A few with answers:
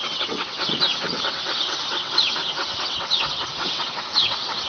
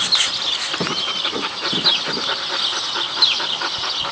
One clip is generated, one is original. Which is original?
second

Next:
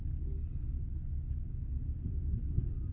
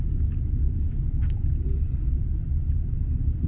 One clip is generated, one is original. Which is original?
first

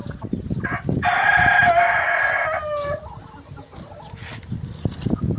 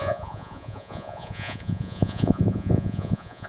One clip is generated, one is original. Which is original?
first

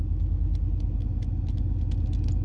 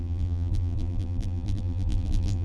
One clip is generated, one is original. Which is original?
first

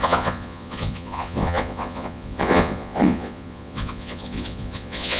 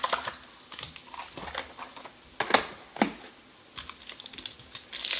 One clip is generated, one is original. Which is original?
second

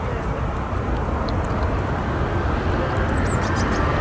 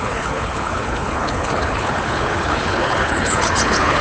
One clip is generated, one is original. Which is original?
first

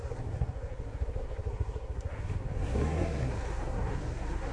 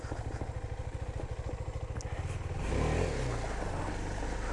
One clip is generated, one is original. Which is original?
second